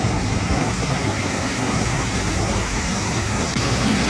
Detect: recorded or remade remade